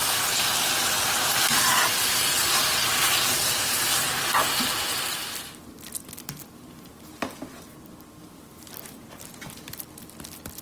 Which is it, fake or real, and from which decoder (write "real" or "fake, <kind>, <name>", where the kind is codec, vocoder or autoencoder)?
real